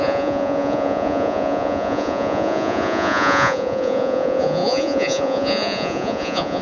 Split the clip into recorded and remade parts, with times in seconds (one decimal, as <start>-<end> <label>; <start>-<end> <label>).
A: 0.0-6.6 remade